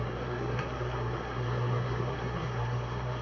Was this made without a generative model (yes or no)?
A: no